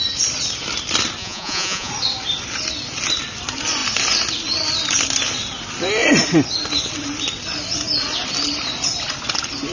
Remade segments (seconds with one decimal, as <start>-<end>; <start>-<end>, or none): 1.2-1.9